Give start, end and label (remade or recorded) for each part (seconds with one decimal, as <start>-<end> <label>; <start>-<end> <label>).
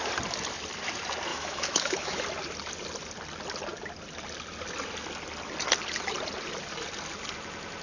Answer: 0.0-1.3 recorded; 1.3-2.2 remade; 2.2-7.8 recorded